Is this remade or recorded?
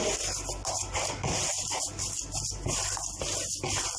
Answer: recorded